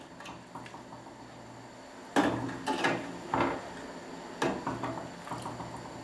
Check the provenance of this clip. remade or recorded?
recorded